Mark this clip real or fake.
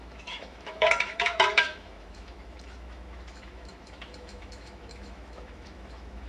fake